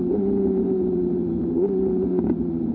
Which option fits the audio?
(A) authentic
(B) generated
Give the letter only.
B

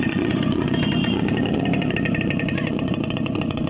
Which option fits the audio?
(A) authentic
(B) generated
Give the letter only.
B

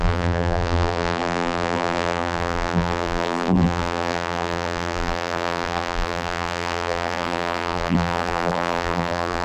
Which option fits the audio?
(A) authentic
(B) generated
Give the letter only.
B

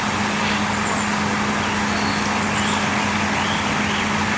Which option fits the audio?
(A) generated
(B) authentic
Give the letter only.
B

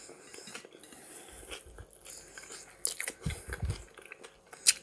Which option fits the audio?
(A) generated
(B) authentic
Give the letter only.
B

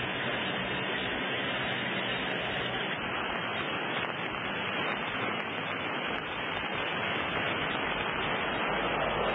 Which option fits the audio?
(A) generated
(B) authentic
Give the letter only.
B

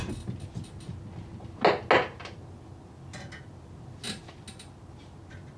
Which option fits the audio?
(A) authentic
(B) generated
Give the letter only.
A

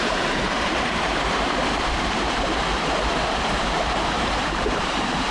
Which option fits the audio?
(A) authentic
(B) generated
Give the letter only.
B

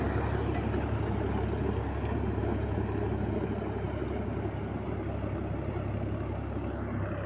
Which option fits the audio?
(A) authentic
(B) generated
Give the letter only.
A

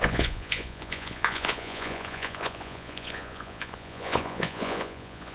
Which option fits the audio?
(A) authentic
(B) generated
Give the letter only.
B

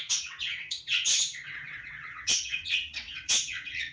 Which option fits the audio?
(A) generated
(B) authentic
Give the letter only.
A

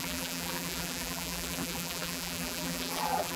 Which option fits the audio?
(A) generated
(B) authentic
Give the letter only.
A